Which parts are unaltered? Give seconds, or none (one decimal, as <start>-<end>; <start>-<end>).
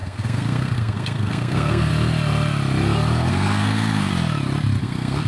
1.9-3.3; 4.1-4.8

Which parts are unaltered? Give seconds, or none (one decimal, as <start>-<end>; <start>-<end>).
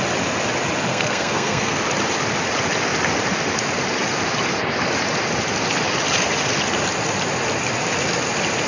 0.0-0.9; 1.8-8.7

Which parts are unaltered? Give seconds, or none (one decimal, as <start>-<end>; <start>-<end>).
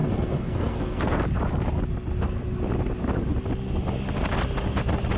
1.2-5.2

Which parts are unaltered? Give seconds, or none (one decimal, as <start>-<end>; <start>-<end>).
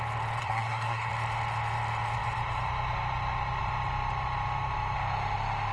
0.0-0.4; 1.1-5.7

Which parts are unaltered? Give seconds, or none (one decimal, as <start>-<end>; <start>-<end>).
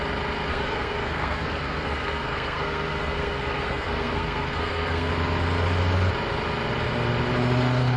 0.0-0.5; 5.1-8.0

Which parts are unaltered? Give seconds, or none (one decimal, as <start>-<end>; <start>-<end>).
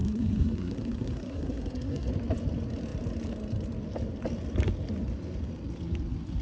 2.1-6.4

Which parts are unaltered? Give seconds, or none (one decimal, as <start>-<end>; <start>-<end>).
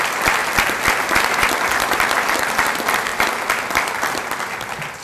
0.0-5.0